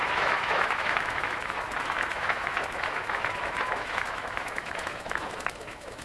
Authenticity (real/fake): fake